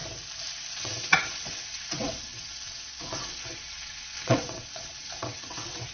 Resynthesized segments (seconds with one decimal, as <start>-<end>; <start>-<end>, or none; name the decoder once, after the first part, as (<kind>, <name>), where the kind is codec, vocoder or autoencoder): 0.7-5.9 (vocoder, WaveNeXt)